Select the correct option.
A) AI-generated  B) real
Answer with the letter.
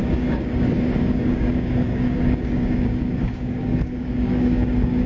A